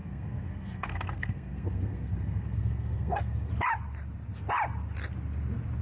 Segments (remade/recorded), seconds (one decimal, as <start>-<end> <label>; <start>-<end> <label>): 0.0-3.5 remade; 3.5-5.8 recorded